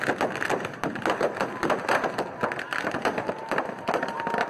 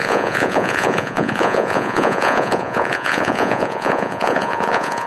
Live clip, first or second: first